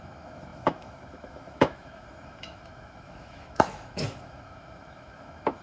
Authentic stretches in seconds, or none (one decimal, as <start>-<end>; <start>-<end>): none